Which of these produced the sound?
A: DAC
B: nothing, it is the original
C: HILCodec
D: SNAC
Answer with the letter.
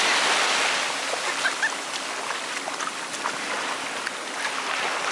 B